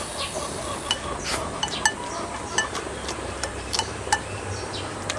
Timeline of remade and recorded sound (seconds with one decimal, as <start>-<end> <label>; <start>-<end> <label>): 0.0-2.6 recorded; 2.6-4.2 remade; 4.2-5.2 recorded